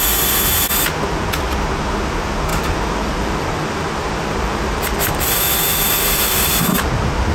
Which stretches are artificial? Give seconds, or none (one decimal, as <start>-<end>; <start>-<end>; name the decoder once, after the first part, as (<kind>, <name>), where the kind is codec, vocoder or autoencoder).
2.5-6.6 (vocoder, BigVGAN v2)